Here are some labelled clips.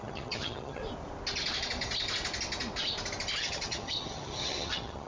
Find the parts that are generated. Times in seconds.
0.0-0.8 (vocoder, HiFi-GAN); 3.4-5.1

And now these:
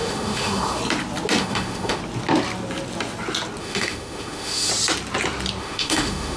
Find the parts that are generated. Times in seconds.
0.0-0.8 (autoencoder, DAC-VAE); 1.4-2.0; 3.6-4.7; 5.6-6.4

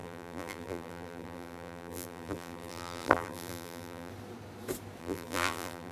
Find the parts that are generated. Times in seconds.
0.0-4.1 (vocoder, BigVGAN v2); 5.0-5.9

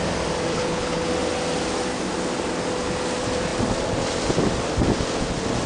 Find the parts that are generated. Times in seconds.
0.5-1.1 (codec, HILCodec)

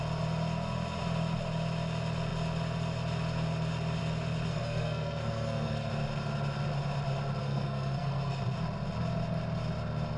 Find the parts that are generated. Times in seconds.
4.5-5.9 (codec, SNAC); 7.4-8.4